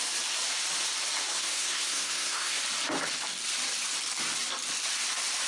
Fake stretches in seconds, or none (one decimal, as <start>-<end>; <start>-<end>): 1.2-2.6